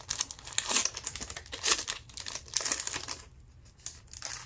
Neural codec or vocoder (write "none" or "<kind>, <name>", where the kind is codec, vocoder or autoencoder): none